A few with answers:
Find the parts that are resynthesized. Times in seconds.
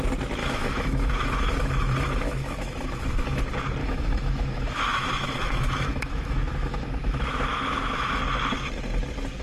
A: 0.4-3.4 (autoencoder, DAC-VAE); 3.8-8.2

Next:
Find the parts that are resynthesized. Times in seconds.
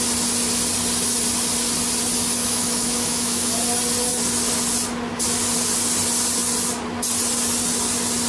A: 2.4-3.5 (autoencoder, DAC-VAE)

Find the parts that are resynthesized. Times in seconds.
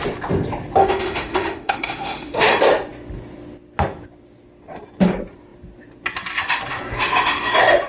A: 0.8-2.5 (autoencoder, DAC-VAE)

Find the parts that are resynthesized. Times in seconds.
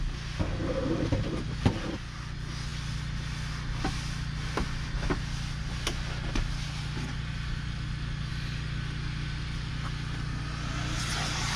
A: none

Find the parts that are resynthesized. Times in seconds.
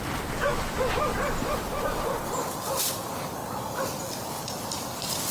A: none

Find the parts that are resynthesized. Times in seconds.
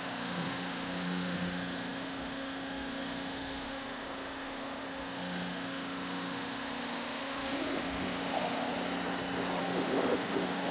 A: 0.0-8.7 (autoencoder, DAC-VAE); 9.6-10.7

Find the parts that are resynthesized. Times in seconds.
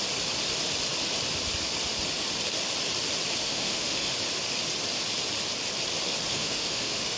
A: 3.4-4.1 (autoencoder, DAC-VAE); 6.3-7.2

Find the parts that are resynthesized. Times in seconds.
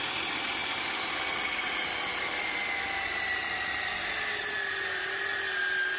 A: none